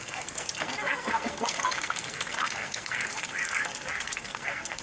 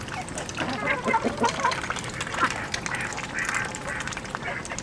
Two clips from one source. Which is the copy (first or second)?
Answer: first